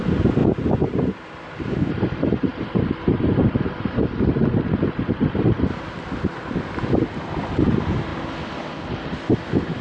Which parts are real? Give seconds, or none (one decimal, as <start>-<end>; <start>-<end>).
0.0-0.4; 1.7-9.8